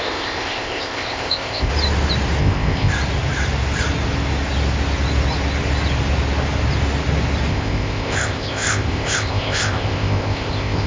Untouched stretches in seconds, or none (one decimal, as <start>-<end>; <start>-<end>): 1.7-2.4; 2.9-7.5

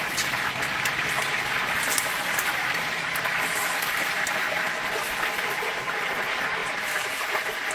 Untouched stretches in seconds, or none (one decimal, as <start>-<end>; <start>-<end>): 0.0-6.6

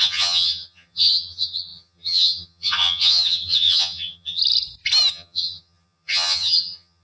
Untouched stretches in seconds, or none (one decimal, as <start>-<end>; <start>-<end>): 4.4-5.1